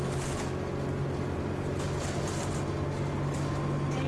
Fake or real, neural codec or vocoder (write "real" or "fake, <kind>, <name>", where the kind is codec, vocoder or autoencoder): real